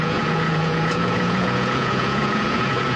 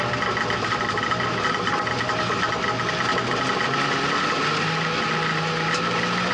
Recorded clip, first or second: second